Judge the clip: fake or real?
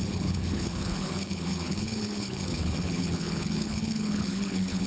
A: fake